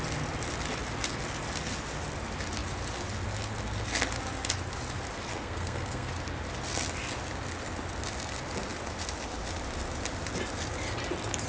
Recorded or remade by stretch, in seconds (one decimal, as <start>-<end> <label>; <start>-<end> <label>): 0.0-5.3 recorded; 5.3-6.1 remade; 6.1-11.5 recorded